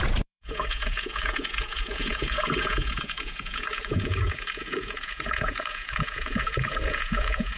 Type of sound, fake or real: fake